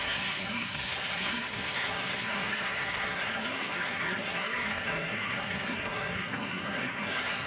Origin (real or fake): fake